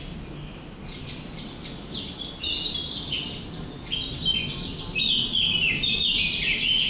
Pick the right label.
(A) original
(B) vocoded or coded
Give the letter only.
A